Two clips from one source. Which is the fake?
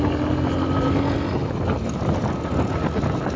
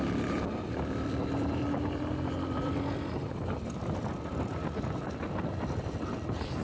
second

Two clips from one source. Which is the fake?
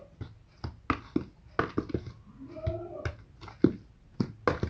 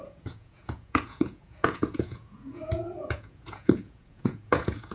second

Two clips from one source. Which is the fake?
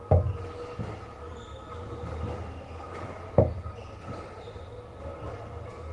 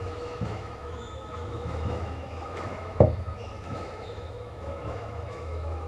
second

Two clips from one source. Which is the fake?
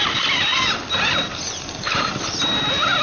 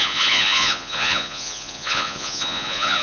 second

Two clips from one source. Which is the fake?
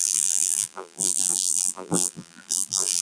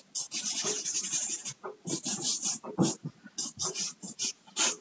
first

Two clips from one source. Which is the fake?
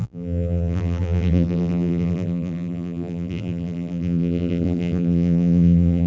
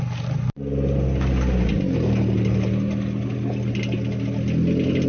first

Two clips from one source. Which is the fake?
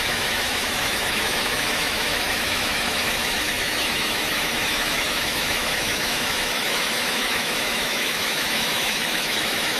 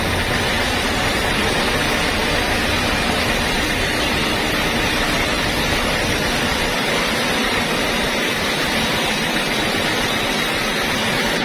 first